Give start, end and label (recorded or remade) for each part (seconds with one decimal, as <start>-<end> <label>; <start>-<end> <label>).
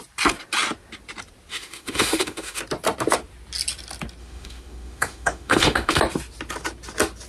0.0-1.5 recorded; 1.5-2.6 remade; 2.6-4.2 recorded; 4.2-6.0 remade; 6.0-7.3 recorded